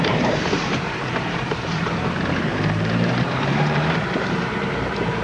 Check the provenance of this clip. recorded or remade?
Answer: remade